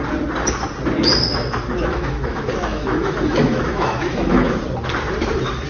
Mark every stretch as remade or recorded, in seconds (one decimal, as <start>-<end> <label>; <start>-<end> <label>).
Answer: 0.0-1.9 recorded; 1.9-4.5 remade; 4.5-5.7 recorded